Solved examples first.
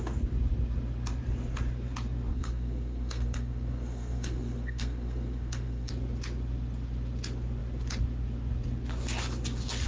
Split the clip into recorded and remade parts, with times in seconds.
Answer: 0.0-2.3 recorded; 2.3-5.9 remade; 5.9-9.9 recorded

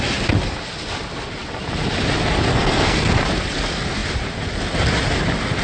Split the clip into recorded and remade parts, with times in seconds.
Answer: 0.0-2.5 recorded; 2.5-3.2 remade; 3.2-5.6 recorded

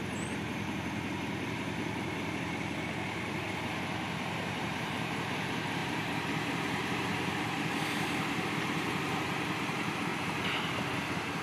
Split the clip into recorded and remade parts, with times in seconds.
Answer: 0.0-10.1 remade; 10.1-10.8 recorded; 10.8-11.4 remade